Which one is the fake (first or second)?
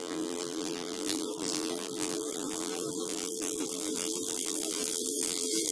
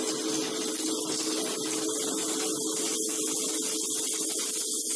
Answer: first